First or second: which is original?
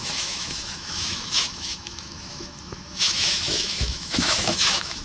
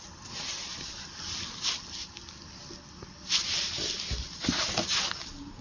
second